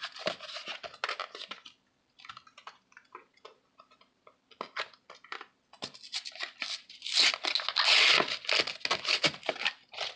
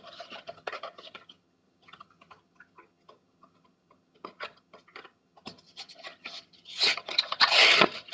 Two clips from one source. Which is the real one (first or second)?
first